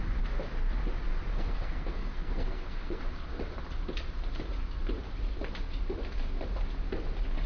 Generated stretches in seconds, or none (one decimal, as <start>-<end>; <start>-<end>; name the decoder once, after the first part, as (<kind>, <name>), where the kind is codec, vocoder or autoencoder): 1.3-3.0 (codec, SNAC)